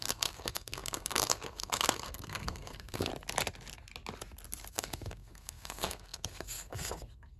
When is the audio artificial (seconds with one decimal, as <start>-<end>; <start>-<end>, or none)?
0.0-3.1; 4.7-7.4